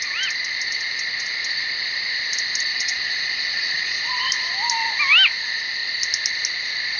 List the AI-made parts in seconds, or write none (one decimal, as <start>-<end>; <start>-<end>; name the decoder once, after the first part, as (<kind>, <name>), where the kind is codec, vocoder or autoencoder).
2.7-4.2 (vocoder, Vocos)